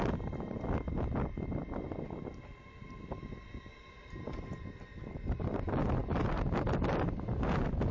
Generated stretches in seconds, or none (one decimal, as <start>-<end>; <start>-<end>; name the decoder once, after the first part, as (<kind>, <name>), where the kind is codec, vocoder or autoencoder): none